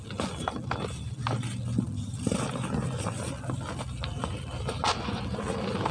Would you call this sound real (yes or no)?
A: yes